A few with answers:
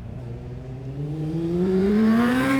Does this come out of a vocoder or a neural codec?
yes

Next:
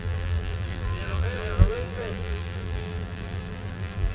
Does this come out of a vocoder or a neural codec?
yes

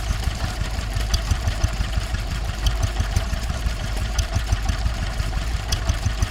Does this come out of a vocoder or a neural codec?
yes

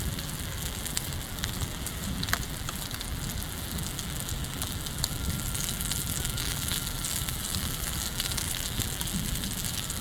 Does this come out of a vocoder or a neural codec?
yes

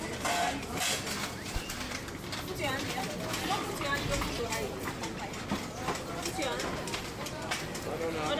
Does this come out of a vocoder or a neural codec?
no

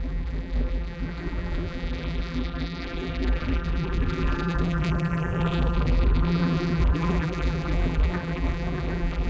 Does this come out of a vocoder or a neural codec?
yes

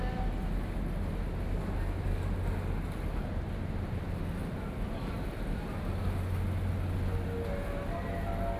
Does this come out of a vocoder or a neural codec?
no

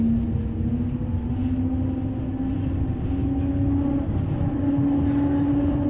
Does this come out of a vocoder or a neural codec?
no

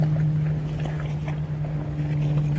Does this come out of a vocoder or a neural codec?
no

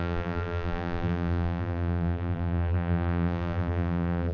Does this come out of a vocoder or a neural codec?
yes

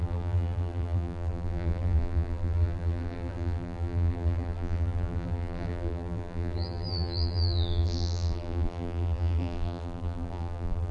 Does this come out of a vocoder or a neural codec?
yes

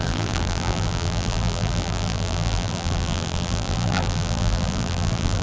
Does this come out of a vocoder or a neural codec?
yes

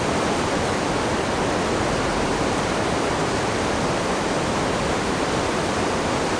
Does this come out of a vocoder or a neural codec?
yes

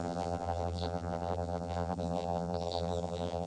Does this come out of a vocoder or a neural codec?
yes